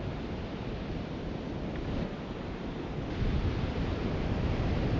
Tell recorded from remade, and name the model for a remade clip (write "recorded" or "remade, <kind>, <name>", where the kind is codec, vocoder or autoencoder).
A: recorded